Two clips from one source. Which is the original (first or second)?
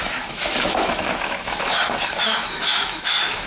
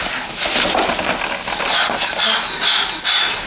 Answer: second